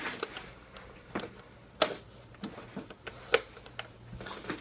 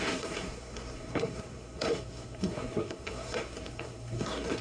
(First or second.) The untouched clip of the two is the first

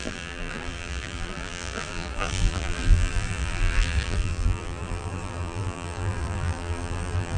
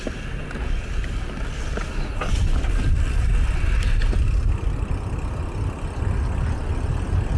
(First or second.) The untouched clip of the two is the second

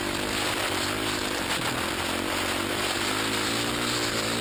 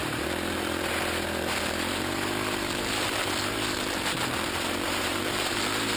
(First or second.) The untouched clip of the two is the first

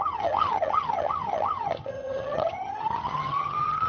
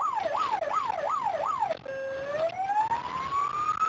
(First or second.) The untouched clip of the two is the second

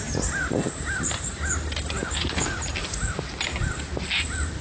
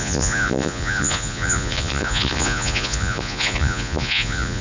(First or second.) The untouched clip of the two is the first